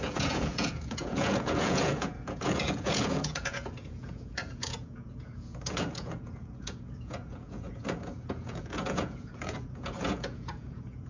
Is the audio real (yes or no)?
no